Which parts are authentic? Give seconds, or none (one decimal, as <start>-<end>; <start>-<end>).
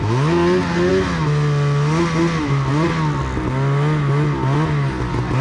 0.0-5.4